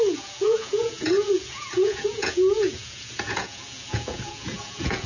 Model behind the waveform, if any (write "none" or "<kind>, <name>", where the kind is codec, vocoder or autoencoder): vocoder, Vocos